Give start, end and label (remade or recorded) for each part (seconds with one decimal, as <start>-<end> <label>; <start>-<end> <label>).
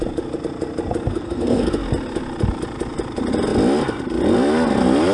0.0-1.1 recorded; 1.1-1.7 remade; 1.7-5.1 recorded